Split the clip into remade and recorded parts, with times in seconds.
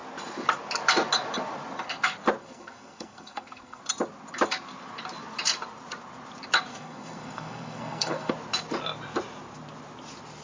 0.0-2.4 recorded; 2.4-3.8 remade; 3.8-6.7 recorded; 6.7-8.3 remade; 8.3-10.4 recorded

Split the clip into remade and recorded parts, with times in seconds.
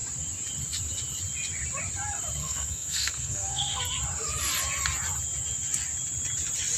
0.0-2.4 recorded; 2.4-3.8 remade; 3.8-6.8 recorded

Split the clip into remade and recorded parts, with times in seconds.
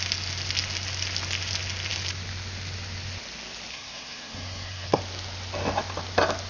0.0-3.7 recorded; 3.7-5.0 remade; 5.0-6.5 recorded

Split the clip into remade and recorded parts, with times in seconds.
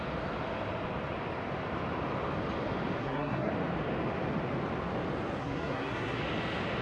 0.0-3.0 recorded; 3.0-3.5 remade; 3.5-5.4 recorded; 5.4-6.2 remade; 6.2-6.8 recorded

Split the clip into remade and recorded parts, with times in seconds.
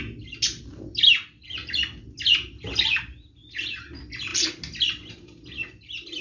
0.0-6.2 recorded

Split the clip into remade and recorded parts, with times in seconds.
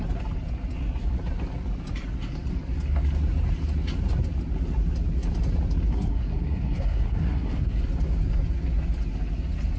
0.0-5.9 recorded; 5.9-7.8 remade; 7.8-9.8 recorded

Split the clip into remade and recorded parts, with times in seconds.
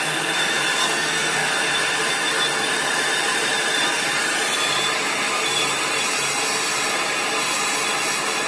0.0-0.8 recorded; 0.8-1.5 remade; 1.5-8.5 recorded